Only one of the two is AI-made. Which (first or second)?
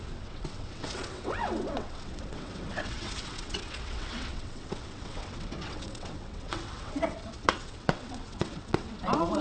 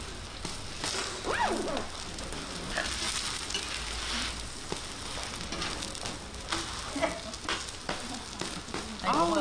first